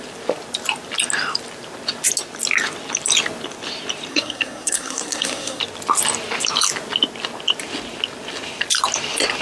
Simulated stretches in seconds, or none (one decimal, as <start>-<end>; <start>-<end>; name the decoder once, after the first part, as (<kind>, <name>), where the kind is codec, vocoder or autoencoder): 4.1-5.6 (codec, SNAC)